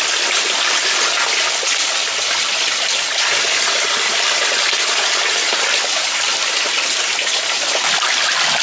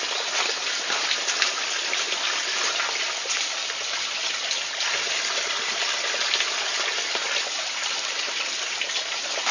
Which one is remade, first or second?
first